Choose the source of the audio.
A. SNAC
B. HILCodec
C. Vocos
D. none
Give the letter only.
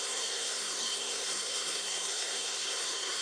A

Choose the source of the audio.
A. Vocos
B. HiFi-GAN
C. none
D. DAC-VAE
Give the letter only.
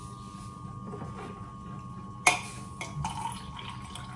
C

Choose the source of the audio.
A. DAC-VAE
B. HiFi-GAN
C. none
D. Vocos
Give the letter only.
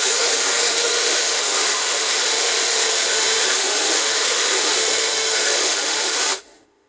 A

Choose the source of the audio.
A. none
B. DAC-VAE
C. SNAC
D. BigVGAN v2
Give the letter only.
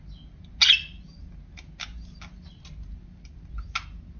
A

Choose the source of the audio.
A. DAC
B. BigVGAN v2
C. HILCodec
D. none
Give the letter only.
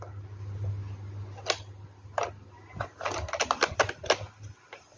D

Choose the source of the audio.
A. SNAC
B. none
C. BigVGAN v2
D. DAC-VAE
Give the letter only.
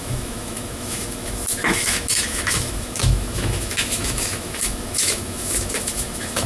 D